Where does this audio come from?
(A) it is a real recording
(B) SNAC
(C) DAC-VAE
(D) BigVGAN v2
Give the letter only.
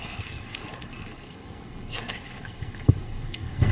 B